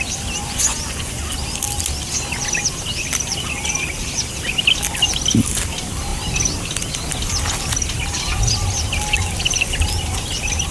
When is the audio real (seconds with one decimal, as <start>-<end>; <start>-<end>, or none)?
0.0-0.4; 1.2-10.7